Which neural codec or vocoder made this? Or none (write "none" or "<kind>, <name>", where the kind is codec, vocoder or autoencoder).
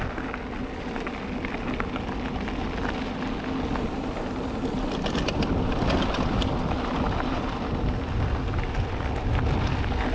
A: none